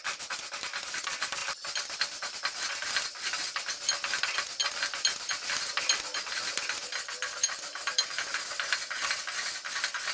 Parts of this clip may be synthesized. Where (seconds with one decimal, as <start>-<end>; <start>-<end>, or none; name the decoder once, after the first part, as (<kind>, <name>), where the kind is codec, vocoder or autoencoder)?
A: 1.4-2.7 (vocoder, BigVGAN v2); 4.6-8.2